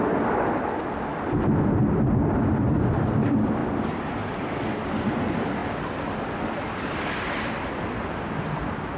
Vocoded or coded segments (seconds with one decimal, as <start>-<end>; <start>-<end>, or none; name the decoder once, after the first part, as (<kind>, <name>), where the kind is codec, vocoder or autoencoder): 0.0-1.1 (vocoder, BigVGAN v2); 1.7-3.6; 4.5-9.0

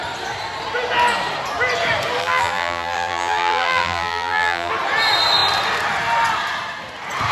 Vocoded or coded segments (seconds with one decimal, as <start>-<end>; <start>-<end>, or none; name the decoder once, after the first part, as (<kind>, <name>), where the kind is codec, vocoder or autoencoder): 2.2-4.7 (vocoder, BigVGAN v2)

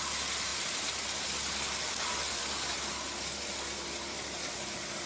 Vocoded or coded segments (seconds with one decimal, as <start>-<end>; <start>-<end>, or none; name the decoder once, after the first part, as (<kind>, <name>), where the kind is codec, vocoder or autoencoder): 0.5-2.5 (vocoder, BigVGAN v2)